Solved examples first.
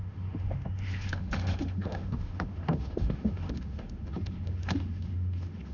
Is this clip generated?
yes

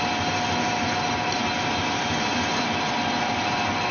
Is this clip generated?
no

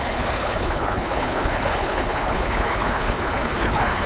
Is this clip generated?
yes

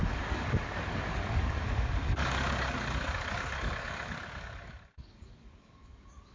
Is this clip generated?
yes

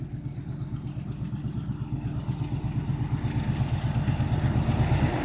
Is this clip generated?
no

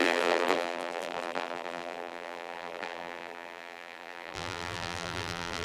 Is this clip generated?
yes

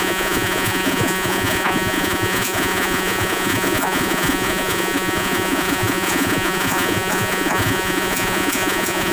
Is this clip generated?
yes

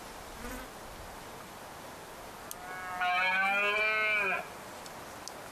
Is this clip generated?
no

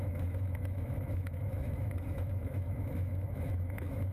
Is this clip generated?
yes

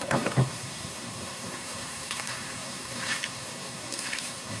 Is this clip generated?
yes